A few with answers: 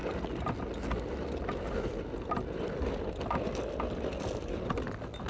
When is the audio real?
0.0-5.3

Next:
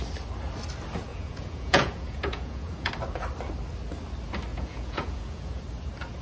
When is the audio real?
0.0-1.1; 2.9-4.5; 5.6-6.2

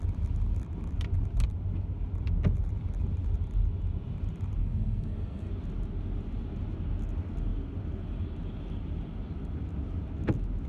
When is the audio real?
0.0-4.6; 5.5-10.7

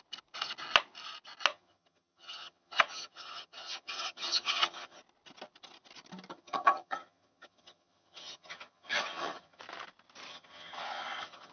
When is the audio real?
0.0-1.5; 5.0-6.3; 9.6-10.3

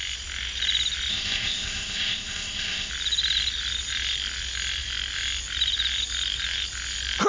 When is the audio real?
0.0-1.1; 2.9-7.3

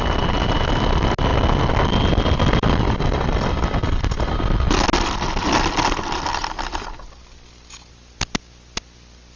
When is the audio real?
0.0-9.4